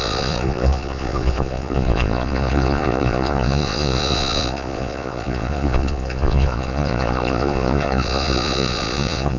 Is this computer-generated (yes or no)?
yes